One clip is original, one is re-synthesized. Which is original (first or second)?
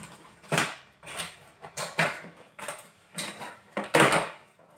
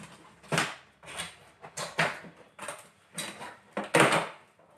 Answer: second